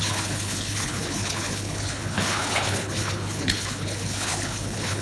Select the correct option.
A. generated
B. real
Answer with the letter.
A